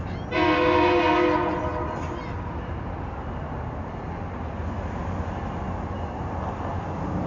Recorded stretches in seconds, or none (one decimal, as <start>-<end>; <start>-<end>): 0.0-7.3